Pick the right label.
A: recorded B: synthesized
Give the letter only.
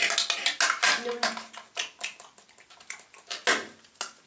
A